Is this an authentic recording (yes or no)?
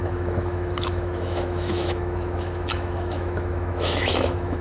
no